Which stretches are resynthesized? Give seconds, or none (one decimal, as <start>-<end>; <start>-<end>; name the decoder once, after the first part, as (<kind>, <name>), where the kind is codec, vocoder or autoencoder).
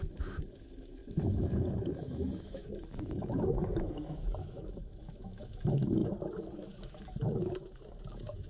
0.0-8.5 (autoencoder, DAC-VAE)